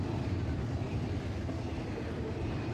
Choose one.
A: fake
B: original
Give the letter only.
B